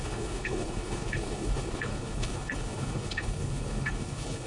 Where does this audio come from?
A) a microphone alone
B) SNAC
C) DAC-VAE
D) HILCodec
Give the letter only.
D